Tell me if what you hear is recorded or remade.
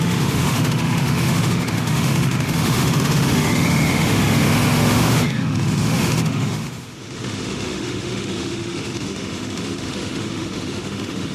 remade